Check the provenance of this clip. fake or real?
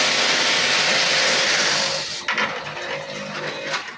real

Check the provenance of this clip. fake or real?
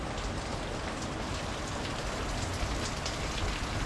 real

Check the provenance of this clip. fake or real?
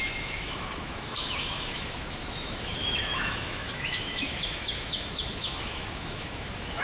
fake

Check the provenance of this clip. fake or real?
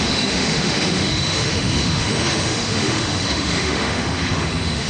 fake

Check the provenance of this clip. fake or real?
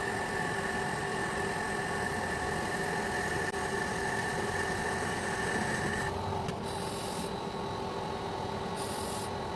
real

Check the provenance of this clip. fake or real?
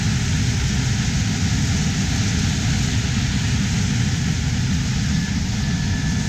real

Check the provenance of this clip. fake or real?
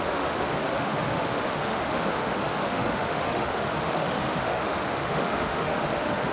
fake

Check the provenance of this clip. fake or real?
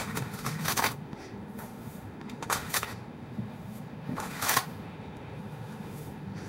fake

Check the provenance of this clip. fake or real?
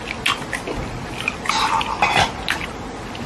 real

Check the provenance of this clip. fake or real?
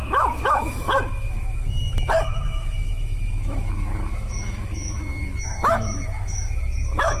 fake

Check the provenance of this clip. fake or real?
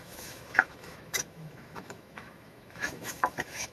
fake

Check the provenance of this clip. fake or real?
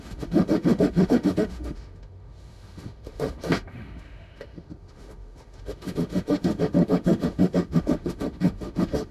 fake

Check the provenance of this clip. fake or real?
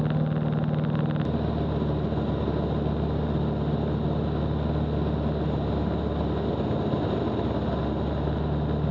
real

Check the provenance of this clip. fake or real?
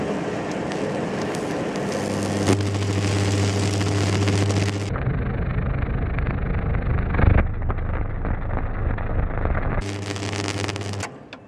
real